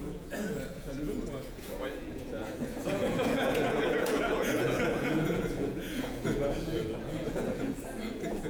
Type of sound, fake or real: fake